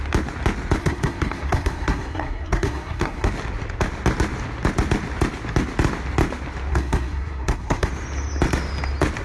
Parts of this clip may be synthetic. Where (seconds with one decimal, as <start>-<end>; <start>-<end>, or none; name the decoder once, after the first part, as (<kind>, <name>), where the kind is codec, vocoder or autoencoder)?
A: 0.8-3.3 (codec, SNAC); 6.7-7.9